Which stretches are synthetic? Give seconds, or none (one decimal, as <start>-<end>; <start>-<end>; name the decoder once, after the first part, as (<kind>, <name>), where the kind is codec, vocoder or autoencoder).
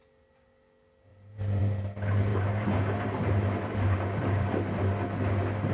1.1-1.6 (vocoder, BigVGAN v2); 2.3-4.8